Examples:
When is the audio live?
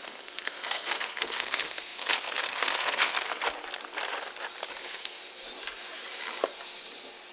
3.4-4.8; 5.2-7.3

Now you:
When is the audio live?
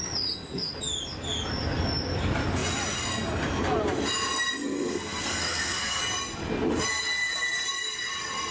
0.0-4.6; 6.0-8.5